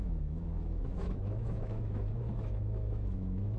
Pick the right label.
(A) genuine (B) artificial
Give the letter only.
B